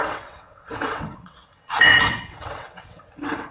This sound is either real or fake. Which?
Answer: fake